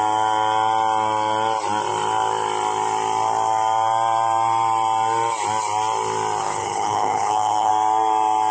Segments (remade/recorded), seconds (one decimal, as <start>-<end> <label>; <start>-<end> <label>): 0.0-6.4 recorded; 6.4-7.7 remade; 7.7-8.5 recorded